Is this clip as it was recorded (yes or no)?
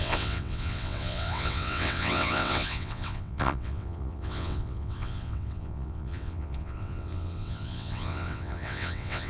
no